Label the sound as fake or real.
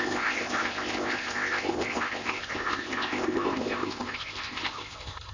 fake